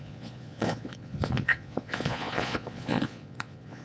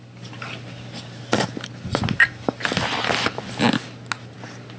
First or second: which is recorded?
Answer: second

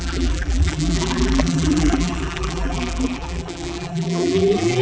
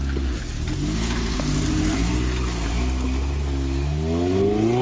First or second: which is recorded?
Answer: second